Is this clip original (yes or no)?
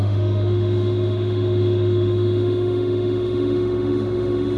no